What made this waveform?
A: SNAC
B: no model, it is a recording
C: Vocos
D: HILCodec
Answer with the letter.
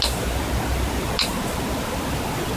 B